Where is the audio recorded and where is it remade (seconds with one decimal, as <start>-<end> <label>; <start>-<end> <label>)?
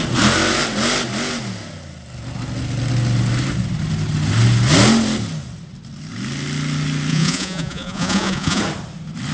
0.0-7.1 recorded; 7.1-8.6 remade; 8.6-9.3 recorded